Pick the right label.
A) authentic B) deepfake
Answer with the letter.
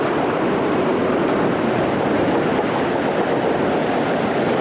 A